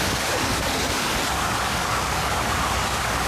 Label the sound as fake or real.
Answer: fake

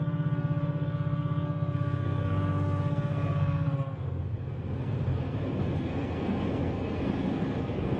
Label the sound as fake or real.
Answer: fake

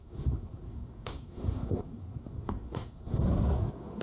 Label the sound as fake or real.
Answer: fake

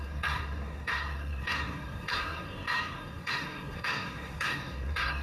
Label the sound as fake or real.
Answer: fake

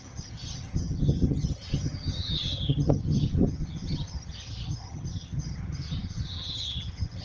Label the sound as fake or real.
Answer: fake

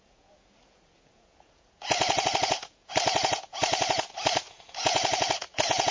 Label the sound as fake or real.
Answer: fake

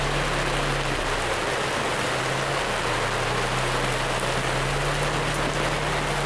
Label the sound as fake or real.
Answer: real